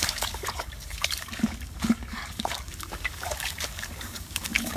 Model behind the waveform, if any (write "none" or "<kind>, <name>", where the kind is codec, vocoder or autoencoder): codec, DAC